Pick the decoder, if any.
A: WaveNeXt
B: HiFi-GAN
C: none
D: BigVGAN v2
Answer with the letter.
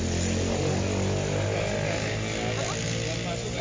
C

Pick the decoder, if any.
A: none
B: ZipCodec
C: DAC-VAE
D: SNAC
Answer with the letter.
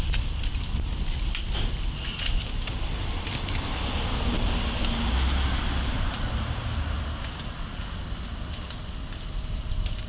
A